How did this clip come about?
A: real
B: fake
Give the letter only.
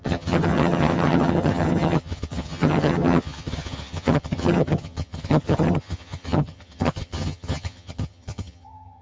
B